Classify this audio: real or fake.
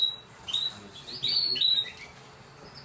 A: real